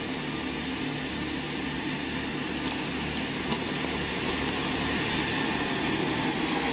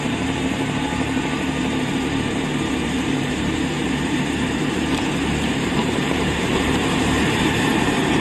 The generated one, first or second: second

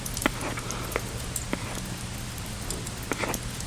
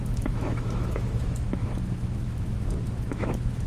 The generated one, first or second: second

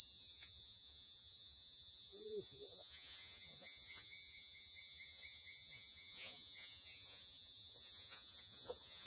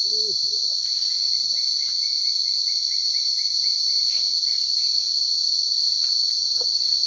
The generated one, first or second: first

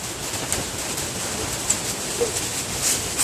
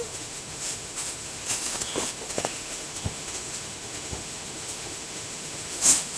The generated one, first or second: second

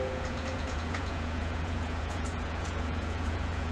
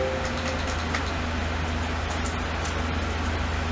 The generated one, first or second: first